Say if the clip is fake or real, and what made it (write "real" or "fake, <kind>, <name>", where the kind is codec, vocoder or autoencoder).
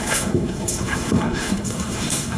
fake, codec, SNAC